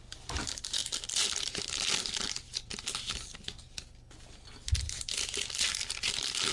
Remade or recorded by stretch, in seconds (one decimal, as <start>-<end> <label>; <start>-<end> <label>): 0.0-6.5 recorded